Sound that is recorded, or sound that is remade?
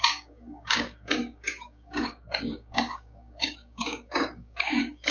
remade